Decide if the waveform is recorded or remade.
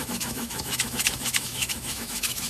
remade